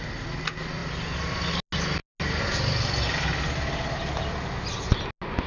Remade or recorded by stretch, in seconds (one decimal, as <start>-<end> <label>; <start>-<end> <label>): 0.0-5.5 recorded